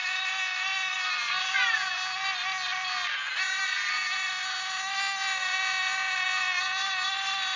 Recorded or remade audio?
recorded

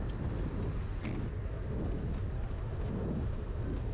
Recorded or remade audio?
recorded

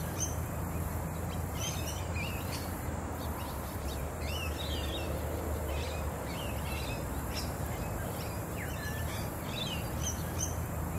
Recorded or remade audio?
remade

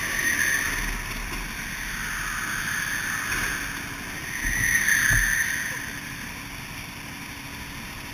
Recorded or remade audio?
recorded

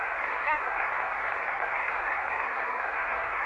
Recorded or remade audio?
remade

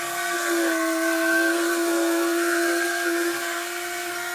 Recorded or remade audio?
remade